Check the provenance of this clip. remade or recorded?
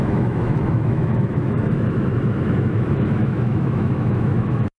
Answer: remade